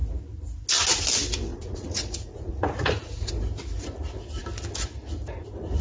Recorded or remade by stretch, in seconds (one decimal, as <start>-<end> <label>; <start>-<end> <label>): 0.0-1.5 recorded; 1.5-3.3 remade; 3.3-5.8 recorded